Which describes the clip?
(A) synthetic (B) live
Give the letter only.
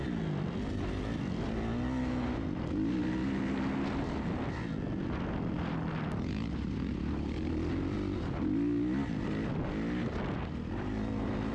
B